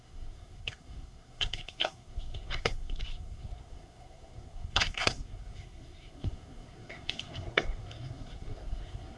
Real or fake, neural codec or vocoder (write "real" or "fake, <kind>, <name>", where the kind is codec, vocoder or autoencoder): fake, codec, SNAC